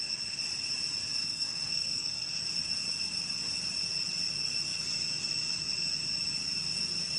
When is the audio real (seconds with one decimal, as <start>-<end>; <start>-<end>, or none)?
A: 0.0-1.2; 2.4-7.2